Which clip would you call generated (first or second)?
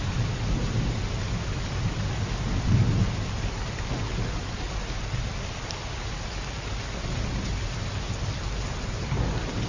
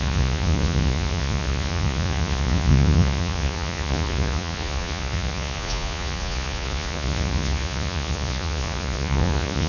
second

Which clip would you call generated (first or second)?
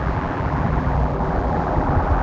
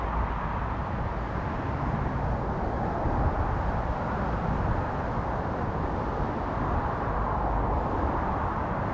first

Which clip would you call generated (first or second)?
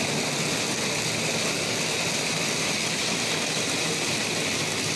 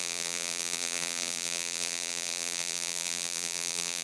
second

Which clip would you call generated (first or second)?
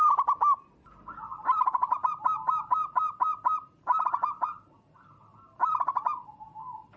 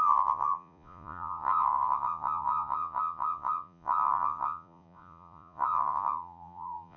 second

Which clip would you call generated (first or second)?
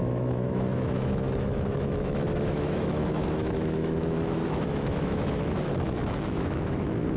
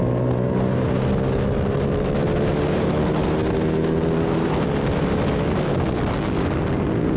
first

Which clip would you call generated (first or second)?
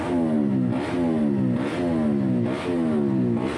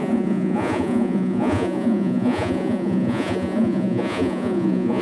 second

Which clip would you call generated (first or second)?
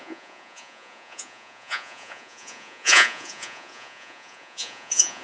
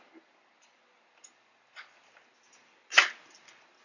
first